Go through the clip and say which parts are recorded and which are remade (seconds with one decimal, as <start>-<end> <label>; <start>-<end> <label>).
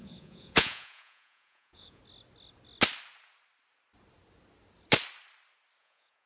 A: 0.0-2.0 remade; 2.0-5.8 recorded; 5.8-6.3 remade